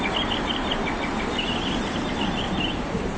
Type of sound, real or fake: real